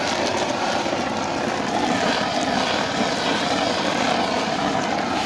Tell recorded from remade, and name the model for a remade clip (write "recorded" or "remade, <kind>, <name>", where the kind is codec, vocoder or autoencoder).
recorded